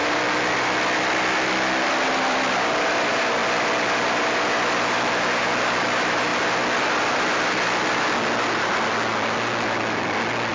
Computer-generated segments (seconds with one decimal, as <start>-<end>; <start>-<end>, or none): 1.9-3.4; 5.4-6.3